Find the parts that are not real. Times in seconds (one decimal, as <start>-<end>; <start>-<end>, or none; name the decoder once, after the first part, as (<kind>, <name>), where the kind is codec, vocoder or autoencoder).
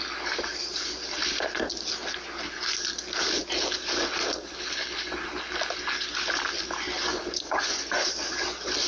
7.1-8.1 (vocoder, Vocos)